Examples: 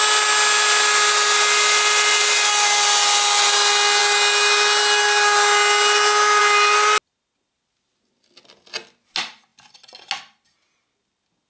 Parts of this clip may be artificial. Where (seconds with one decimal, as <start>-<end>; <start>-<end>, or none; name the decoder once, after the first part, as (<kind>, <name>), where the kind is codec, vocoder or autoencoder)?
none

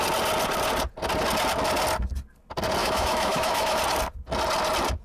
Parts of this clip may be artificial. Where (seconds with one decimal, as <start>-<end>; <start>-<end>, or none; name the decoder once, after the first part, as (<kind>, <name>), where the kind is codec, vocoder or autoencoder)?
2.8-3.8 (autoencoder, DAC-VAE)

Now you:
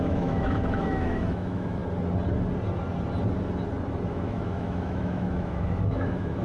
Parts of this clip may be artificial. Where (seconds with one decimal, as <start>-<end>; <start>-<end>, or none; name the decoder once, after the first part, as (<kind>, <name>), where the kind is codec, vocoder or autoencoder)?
0.0-1.8 (autoencoder, DAC-VAE); 4.1-6.4

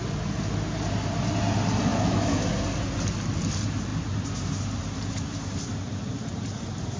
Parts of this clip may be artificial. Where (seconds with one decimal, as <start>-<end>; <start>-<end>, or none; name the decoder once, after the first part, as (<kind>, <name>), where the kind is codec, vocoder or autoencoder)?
1.9-2.5 (autoencoder, DAC-VAE)

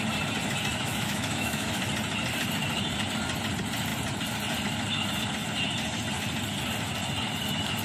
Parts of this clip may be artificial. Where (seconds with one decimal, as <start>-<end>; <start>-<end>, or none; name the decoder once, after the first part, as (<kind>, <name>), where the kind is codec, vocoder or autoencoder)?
0.7-1.8 (autoencoder, DAC-VAE)